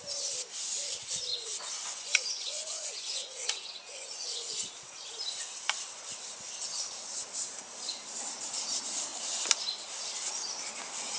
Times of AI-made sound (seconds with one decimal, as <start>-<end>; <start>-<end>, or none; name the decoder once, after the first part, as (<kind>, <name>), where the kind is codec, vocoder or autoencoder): 1.3-4.7 (vocoder, Vocos)